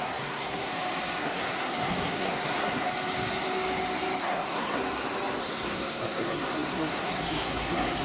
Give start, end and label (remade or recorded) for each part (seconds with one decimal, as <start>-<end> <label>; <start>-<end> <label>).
0.0-0.7 remade; 0.7-1.2 recorded; 1.2-2.9 remade; 2.9-4.2 recorded; 4.2-4.8 remade; 4.8-5.4 recorded; 5.4-8.0 remade